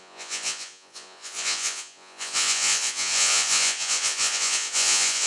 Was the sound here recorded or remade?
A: remade